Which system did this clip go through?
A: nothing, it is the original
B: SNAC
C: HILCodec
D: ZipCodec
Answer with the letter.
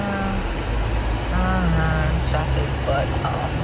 A